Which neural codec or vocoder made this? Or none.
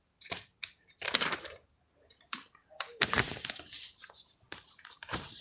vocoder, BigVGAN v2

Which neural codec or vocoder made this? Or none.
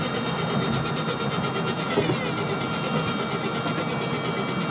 none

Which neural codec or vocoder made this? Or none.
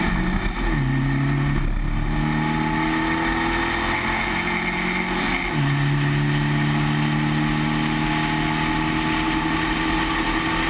none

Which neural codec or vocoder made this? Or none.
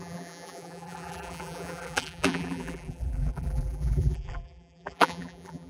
vocoder, BigVGAN v2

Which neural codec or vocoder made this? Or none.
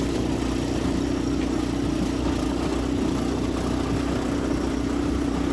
none